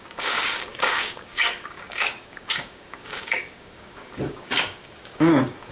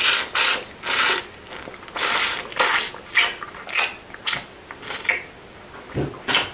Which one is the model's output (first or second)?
first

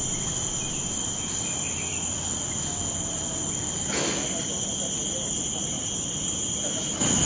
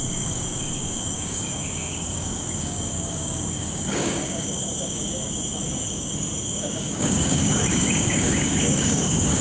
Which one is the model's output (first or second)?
second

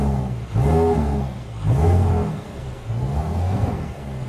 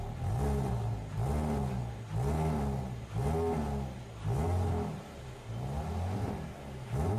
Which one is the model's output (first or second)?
first